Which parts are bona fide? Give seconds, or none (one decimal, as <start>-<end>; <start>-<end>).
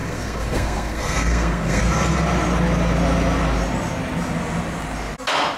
1.8-5.6